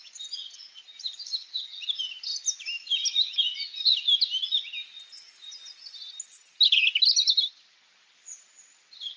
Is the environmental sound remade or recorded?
recorded